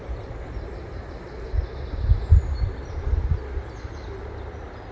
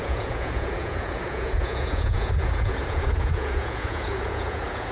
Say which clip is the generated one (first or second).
second